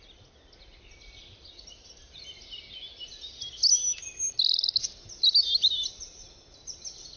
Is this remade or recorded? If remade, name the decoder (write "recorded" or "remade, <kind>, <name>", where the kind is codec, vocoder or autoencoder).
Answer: recorded